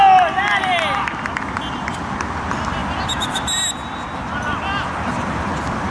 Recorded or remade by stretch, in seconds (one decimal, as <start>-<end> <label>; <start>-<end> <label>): 0.0-5.9 recorded